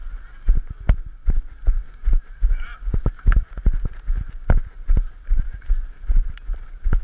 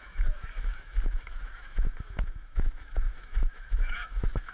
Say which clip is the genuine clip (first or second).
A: first